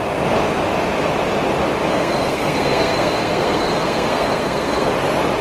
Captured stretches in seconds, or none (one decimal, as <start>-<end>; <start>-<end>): 0.0-1.9; 4.9-5.4